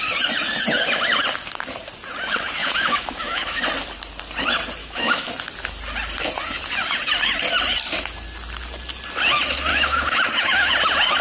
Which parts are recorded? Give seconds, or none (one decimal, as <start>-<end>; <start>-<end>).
0.0-2.6; 3.6-4.8; 5.3-9.7; 10.7-11.2